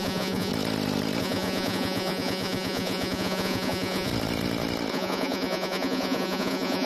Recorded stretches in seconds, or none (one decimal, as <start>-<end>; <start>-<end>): 0.5-1.2; 4.1-4.9